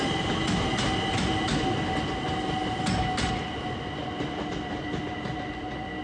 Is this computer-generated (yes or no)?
no